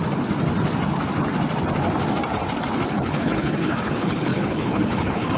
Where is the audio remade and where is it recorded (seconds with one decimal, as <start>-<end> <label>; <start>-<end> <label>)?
0.0-2.9 recorded; 2.9-5.4 remade